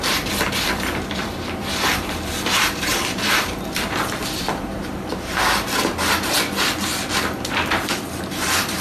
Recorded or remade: remade